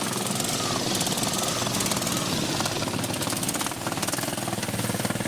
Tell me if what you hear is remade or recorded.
remade